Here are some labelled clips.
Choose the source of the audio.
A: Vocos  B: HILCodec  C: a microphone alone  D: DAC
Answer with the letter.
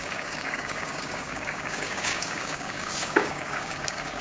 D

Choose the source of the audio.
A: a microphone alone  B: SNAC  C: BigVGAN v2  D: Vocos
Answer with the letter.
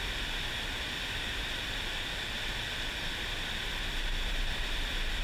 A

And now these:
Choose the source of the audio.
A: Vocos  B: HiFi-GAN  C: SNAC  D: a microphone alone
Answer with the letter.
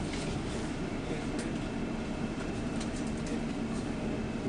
D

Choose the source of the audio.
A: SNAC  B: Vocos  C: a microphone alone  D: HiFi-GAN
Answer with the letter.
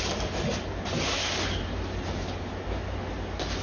C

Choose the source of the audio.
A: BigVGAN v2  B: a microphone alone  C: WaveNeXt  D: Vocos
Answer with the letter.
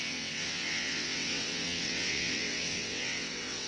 C